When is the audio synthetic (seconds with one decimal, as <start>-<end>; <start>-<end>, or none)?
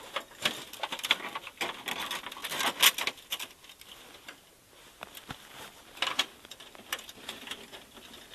none